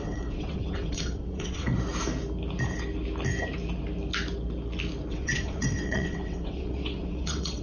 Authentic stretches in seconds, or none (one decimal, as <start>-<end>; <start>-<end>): 1.7-5.1